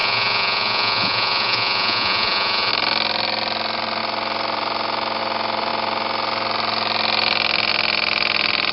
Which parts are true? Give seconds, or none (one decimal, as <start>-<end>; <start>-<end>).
2.7-8.7